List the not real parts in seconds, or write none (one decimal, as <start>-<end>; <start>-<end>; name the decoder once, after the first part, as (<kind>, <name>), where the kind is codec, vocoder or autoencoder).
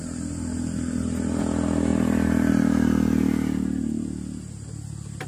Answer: none